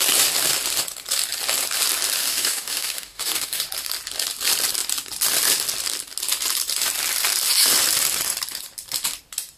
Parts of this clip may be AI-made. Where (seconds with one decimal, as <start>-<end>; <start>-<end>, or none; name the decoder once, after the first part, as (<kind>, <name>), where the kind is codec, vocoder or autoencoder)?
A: 2.2-3.6 (codec, DAC)